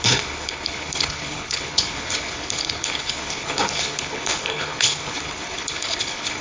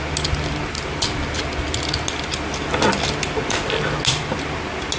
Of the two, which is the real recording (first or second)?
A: second